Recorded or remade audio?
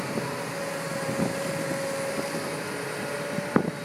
recorded